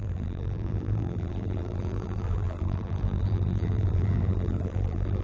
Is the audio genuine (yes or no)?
no